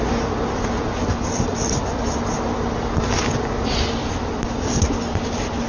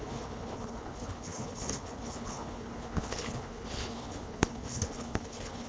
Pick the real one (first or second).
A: first